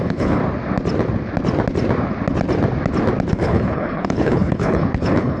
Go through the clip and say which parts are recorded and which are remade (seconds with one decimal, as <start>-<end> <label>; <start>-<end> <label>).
0.0-0.4 remade; 0.4-3.3 recorded; 3.3-5.4 remade